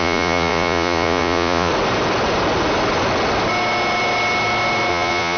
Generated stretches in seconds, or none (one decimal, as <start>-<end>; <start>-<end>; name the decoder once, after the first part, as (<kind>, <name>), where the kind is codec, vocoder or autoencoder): 0.0-1.7 (vocoder, Vocos); 4.9-5.4

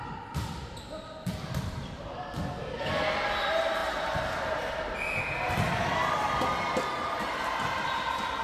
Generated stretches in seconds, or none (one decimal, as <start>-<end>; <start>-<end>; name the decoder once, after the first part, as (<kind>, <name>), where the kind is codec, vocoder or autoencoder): none

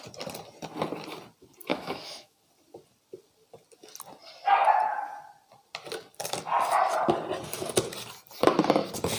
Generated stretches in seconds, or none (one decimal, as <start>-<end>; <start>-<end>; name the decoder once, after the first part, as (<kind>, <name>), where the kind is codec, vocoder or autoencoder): 1.7-2.4 (autoencoder, DAC-VAE)

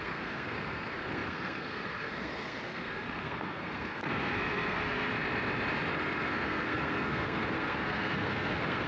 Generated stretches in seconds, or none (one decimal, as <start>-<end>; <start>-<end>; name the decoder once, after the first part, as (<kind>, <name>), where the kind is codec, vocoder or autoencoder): 0.0-5.1 (codec, SNAC); 5.9-8.9

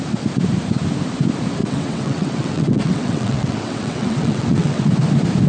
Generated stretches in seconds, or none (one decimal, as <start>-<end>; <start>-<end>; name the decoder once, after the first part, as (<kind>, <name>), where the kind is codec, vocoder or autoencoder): 1.6-4.9 (vocoder, WaveNeXt)